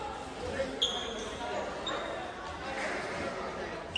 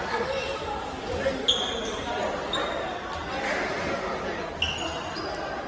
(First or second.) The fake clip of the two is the second